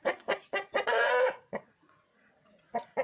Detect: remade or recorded remade